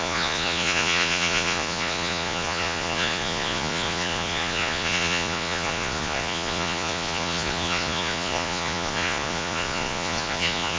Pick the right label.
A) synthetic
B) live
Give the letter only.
A